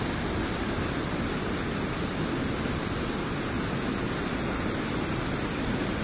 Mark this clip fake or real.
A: real